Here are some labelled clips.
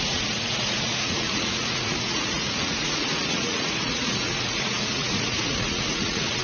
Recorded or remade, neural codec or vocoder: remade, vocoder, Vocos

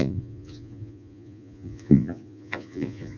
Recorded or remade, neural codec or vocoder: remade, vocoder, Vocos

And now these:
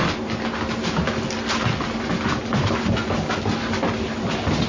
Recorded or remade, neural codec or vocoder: recorded